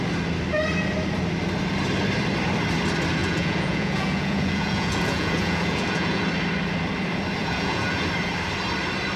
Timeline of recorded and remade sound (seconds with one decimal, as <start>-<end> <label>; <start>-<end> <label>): 0.0-3.2 recorded; 3.2-6.2 remade; 6.2-7.4 recorded; 7.4-8.1 remade; 8.1-9.2 recorded